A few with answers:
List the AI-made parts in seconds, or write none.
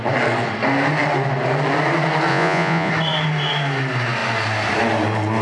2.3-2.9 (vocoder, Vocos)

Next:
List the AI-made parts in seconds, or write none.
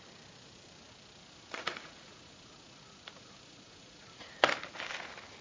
1.2-4.4 (vocoder, Vocos)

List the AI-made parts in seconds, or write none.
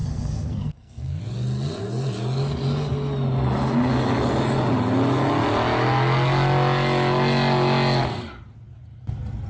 0.0-1.2 (codec, SNAC)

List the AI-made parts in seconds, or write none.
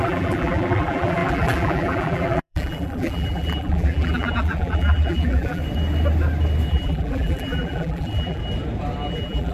0.0-5.6 (vocoder, BigVGAN v2); 6.7-8.4; 9.1-9.5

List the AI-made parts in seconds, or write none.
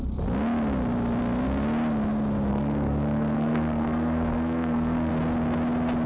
2.5-5.1 (codec, SNAC)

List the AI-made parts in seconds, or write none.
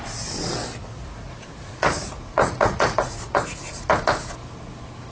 0.8-3.9 (vocoder, Vocos)